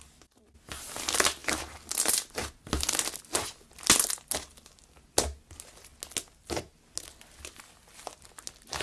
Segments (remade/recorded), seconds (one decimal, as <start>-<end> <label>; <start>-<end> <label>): 0.0-8.8 recorded